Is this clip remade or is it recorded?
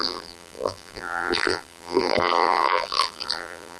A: remade